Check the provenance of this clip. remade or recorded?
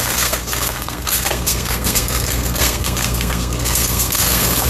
remade